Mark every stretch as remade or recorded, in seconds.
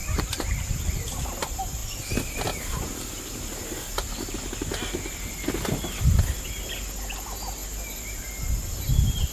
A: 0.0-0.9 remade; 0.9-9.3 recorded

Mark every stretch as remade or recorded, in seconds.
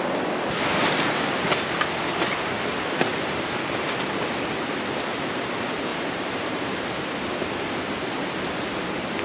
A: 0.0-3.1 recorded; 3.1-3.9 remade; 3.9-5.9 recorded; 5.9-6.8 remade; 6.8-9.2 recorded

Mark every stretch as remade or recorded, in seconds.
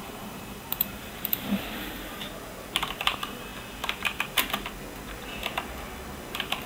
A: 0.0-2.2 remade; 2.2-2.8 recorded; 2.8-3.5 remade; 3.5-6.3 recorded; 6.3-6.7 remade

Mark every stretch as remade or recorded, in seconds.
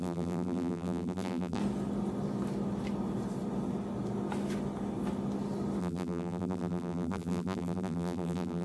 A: 0.0-1.6 remade; 1.6-5.8 recorded; 5.8-8.6 remade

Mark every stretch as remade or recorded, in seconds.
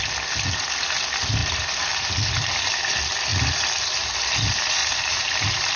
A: 0.0-1.4 recorded; 1.4-2.1 remade; 2.1-5.8 recorded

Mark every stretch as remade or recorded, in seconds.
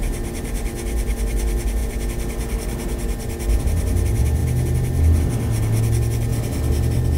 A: 0.0-6.3 recorded; 6.3-7.2 remade